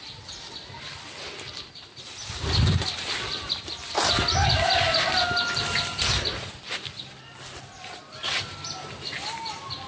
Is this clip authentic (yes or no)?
yes